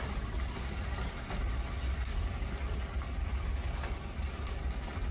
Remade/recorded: recorded